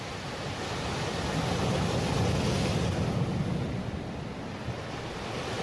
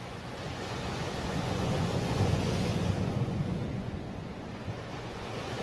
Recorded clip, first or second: first